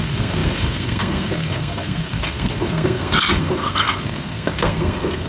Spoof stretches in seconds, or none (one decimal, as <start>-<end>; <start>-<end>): 0.0-5.3

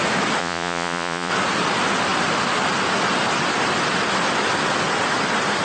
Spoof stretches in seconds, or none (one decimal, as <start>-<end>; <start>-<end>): 0.4-1.3